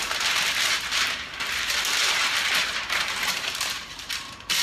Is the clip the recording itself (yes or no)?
no